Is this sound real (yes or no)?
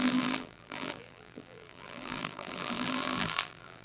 no